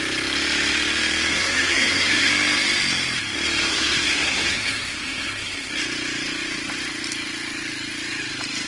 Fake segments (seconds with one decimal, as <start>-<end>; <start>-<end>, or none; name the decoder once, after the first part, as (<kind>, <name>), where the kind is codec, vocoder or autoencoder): 1.3-2.3 (codec, SNAC); 3.7-5.7